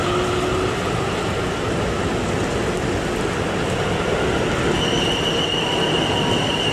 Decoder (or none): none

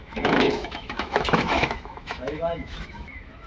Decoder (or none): autoencoder, DAC-VAE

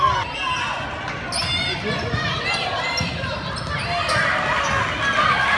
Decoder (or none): none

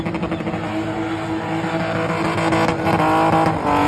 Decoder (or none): none